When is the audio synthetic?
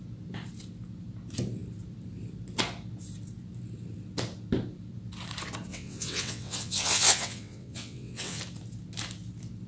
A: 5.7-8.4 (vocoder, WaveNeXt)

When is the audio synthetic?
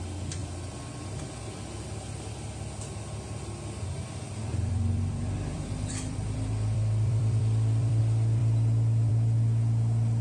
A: 0.4-1.4 (vocoder, BigVGAN v2); 4.5-8.0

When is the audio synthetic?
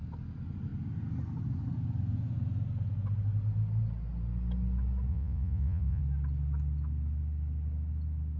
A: 5.1-6.0 (vocoder, Vocos)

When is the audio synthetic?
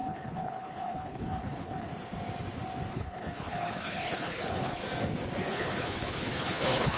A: 0.0-1.9 (codec, HILCodec); 2.9-4.8; 5.5-7.0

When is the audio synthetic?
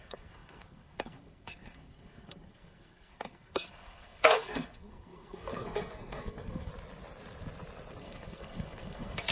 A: 0.0-6.7 (codec, SNAC); 8.0-9.3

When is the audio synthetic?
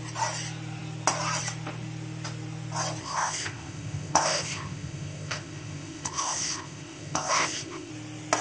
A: 3.0-7.9 (codec, ZipCodec)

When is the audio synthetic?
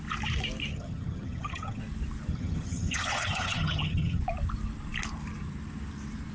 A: 0.7-1.8 (vocoder, HiFi-GAN); 2.3-4.2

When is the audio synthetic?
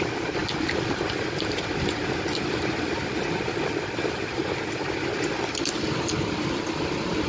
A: none